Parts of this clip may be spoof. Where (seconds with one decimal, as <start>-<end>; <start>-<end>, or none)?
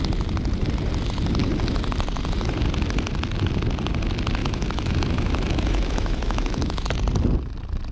4.4-6.9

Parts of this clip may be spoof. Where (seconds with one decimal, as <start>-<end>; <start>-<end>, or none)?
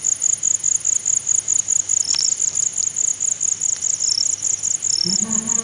none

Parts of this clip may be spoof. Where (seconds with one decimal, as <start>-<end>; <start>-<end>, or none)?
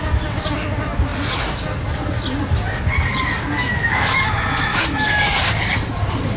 3.6-4.3; 4.7-5.2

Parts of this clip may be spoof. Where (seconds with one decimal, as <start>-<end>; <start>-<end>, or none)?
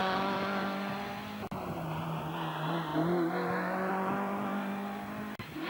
none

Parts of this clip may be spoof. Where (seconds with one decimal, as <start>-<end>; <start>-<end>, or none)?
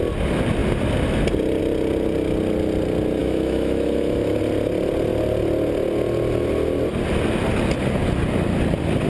3.2-4.4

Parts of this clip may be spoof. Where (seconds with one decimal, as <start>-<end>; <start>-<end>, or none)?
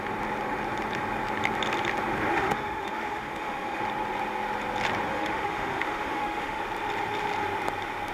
2.3-3.8; 5.1-6.6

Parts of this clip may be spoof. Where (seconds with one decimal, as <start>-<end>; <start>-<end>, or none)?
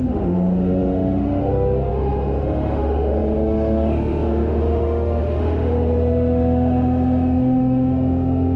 0.0-8.6